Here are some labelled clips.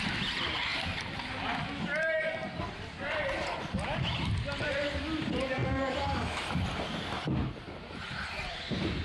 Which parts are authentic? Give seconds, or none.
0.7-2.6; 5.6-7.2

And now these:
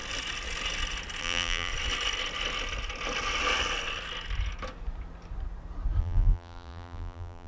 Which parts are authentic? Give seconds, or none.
0.0-1.2; 1.7-6.0

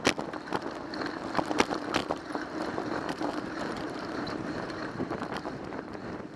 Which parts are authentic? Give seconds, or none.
0.0-2.0; 5.8-6.4

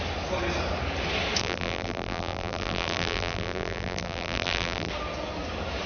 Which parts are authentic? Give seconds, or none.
0.0-1.4; 4.9-5.9

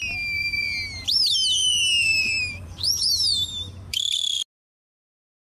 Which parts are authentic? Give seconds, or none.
0.0-1.4; 4.4-5.5

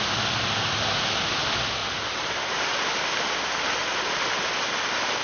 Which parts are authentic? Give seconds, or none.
0.0-1.8; 2.6-5.2